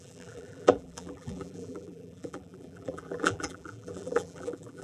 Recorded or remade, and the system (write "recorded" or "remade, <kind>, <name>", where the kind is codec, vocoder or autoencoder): remade, vocoder, BigVGAN v2